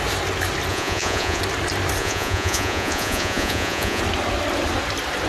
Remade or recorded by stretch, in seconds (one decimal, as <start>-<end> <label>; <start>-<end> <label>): 0.0-0.7 recorded; 0.7-1.4 remade; 1.4-2.0 recorded; 2.0-4.0 remade; 4.0-5.3 recorded